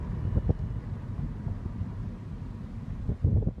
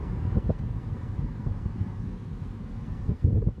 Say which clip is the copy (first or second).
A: second